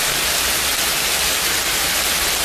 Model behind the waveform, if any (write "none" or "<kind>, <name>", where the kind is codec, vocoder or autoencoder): none